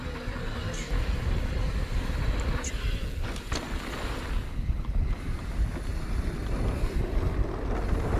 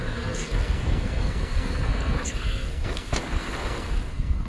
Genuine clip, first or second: first